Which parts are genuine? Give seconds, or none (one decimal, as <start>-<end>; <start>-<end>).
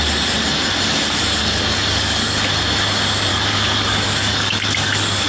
0.0-1.2; 2.5-3.3